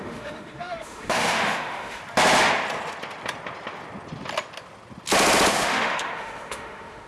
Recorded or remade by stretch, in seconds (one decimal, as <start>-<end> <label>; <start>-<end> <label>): 0.0-2.0 remade; 2.0-5.5 recorded; 5.5-7.1 remade